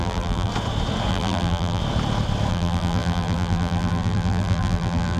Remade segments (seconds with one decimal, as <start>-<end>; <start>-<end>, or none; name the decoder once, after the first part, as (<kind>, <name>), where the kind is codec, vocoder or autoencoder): 0.0-0.5 (vocoder, BigVGAN v2); 1.1-1.8; 2.5-5.2